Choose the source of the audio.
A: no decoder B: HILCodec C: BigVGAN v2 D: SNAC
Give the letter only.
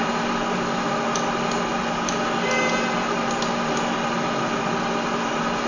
A